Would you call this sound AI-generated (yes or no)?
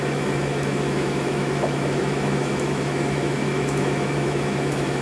yes